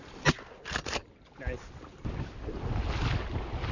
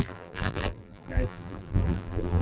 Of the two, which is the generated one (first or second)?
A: second